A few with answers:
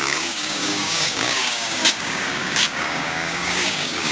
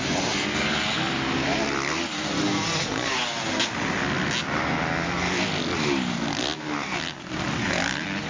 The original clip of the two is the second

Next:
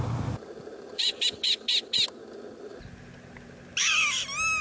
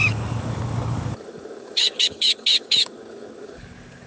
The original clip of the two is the first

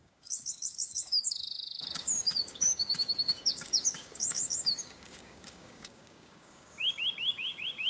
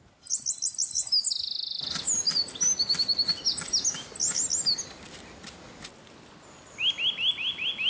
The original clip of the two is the second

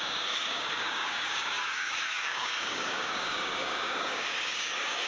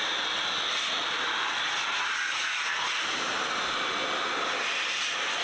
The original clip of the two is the second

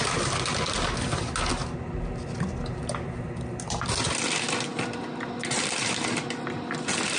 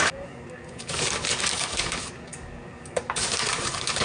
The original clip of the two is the first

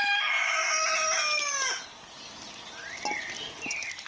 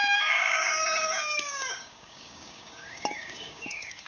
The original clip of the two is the first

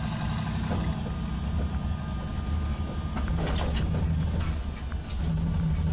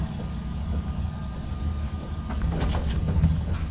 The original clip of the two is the first